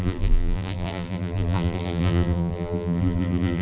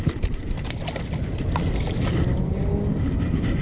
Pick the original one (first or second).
second